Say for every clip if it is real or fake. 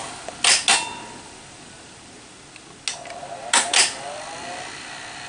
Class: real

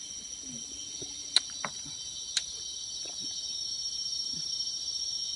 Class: real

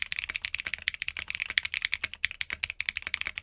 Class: real